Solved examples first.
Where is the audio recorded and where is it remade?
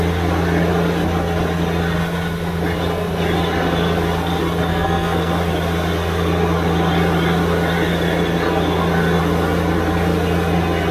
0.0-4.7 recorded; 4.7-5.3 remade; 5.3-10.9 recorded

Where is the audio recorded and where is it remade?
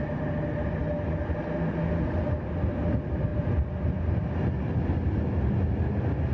0.0-6.3 recorded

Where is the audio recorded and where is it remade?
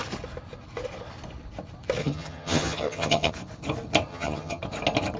0.0-2.0 recorded; 2.0-3.3 remade; 3.3-4.1 recorded; 4.1-4.6 remade; 4.6-5.2 recorded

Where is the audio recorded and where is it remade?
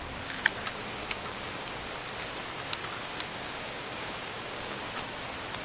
0.0-1.0 recorded; 1.0-1.7 remade; 1.7-3.3 recorded; 3.3-4.8 remade; 4.8-5.6 recorded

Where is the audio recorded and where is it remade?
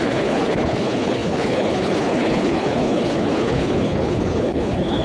0.0-5.0 remade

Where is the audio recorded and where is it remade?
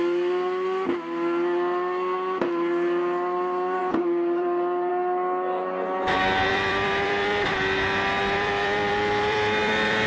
0.0-3.8 recorded; 3.8-4.9 remade; 4.9-6.5 recorded; 6.5-10.1 remade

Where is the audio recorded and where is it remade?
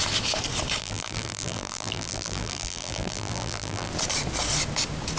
0.0-0.8 recorded; 0.8-3.9 remade; 3.9-5.2 recorded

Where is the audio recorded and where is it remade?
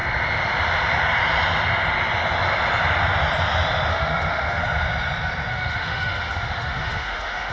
0.0-3.9 recorded; 3.9-4.6 remade; 4.6-5.5 recorded; 5.5-7.5 remade